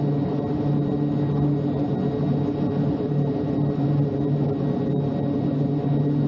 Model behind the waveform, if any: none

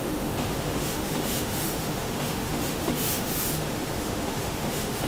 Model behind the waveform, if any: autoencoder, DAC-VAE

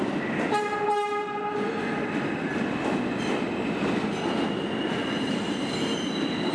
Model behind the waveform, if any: none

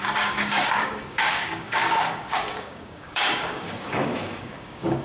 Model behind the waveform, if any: codec, DAC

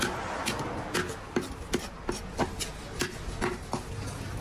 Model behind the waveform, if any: none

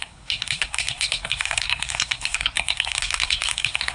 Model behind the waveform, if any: codec, SNAC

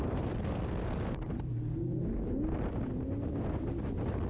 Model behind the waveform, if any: none